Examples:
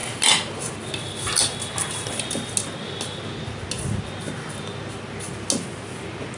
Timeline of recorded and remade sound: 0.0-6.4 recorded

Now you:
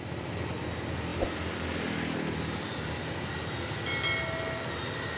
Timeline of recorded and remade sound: 0.0-5.2 recorded

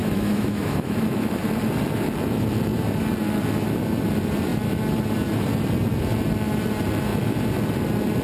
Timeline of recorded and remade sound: 0.0-1.3 remade; 1.3-8.2 recorded

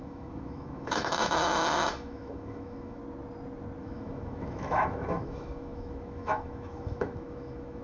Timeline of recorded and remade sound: 0.0-3.0 remade; 3.0-3.8 recorded; 3.8-7.8 remade

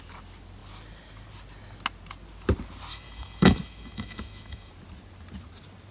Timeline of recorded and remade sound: 0.0-2.9 recorded; 2.9-4.7 remade; 4.7-5.9 recorded